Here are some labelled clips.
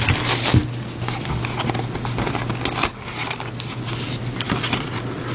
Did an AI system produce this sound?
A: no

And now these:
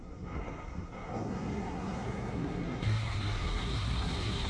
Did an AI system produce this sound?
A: yes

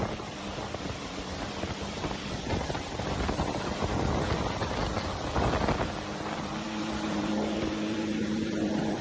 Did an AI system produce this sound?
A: yes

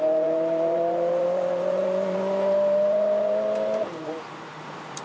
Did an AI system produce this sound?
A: yes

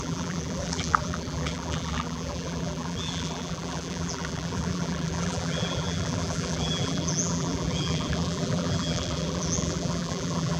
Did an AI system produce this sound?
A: yes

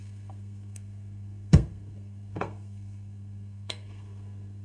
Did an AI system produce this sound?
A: yes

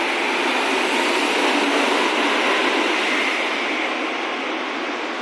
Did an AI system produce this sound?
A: no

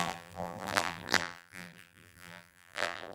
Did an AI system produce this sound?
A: yes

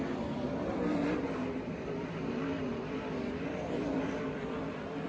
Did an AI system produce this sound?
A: yes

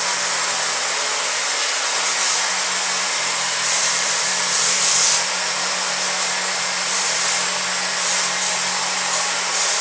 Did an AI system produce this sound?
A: no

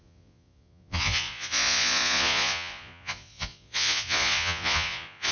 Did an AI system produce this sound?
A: yes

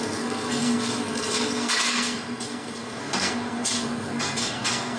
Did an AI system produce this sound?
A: yes